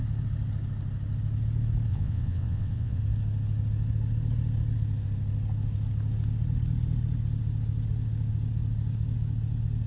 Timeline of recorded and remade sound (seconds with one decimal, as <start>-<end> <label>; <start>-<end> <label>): 0.0-1.9 recorded; 1.9-3.0 remade; 3.0-9.9 recorded